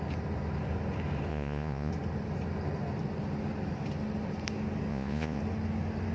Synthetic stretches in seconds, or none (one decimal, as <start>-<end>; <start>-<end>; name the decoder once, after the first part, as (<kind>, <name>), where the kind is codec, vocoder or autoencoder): 1.3-1.9 (vocoder, Vocos); 4.9-5.4

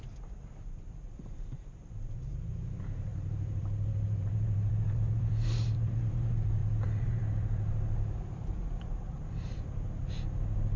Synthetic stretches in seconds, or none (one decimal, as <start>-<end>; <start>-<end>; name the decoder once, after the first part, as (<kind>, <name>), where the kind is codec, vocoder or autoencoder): 0.0-10.0 (vocoder, BigVGAN v2)

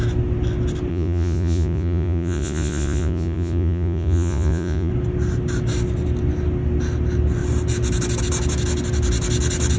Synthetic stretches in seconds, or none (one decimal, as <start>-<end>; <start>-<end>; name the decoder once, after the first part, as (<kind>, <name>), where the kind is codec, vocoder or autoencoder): 0.9-4.9 (vocoder, Vocos)

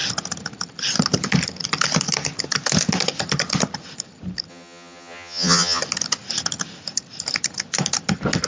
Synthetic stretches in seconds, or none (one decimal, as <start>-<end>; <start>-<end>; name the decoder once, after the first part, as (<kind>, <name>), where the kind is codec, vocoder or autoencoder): 4.5-5.8 (vocoder, HiFi-GAN)

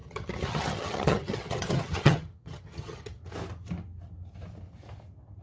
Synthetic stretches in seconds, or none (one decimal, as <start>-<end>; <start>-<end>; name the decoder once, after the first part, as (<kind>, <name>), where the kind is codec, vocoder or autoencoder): 0.0-3.2 (vocoder, HiFi-GAN)

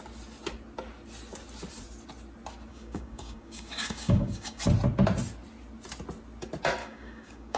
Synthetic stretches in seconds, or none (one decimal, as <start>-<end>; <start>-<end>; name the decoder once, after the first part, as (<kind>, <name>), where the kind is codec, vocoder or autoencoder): 2.7-4.6 (codec, DAC); 6.8-7.6